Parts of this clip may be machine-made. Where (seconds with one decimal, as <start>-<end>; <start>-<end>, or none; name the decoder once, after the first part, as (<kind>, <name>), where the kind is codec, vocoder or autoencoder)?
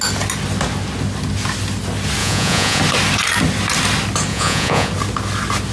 2.2-2.8 (vocoder, Vocos); 4.3-4.9